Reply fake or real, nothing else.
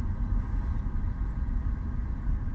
real